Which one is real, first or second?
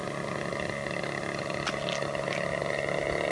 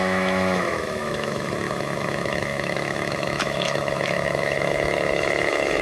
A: first